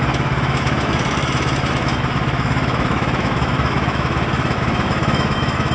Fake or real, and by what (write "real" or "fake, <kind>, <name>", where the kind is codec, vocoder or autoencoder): fake, autoencoder, DAC-VAE